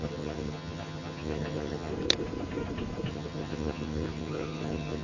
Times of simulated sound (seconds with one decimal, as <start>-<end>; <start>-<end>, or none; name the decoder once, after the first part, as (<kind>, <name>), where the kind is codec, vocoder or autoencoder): 0.0-1.9 (vocoder, HiFi-GAN); 3.1-5.0